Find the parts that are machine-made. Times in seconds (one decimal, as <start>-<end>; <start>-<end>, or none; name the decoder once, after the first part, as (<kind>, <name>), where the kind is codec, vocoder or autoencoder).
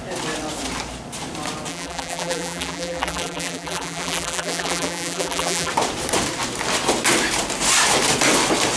1.7-5.7 (vocoder, BigVGAN v2)